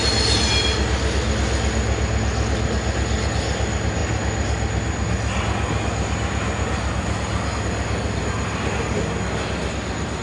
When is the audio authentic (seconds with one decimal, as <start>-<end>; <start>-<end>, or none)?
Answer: 0.0-10.2